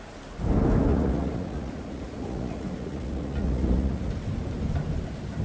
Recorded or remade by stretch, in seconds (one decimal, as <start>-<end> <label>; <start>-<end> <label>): 0.0-0.9 recorded; 0.9-4.1 remade; 4.1-5.4 recorded